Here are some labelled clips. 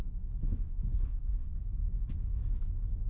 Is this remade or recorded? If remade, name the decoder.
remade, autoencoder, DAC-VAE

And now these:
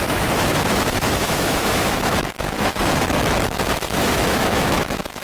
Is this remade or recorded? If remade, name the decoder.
remade, autoencoder, DAC-VAE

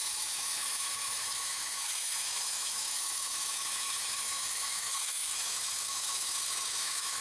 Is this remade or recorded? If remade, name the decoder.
remade, autoencoder, DAC-VAE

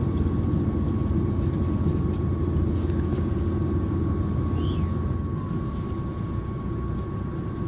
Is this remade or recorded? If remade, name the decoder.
recorded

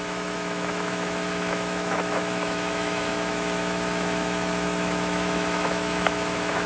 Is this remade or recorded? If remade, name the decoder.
remade, autoencoder, DAC-VAE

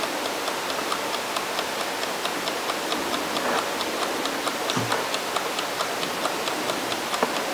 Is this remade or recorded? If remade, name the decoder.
recorded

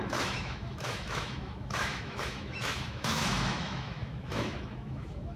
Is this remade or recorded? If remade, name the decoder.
remade, autoencoder, DAC-VAE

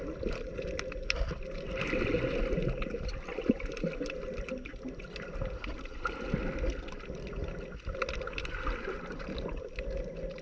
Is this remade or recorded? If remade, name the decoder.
recorded